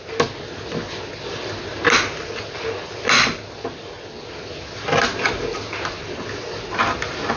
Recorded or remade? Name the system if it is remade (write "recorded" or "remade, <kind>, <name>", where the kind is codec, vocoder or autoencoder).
recorded